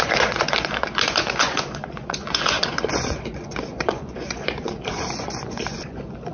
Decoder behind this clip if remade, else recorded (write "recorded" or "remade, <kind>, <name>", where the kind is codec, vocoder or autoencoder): remade, vocoder, Vocos